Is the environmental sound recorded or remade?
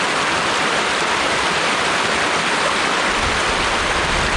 recorded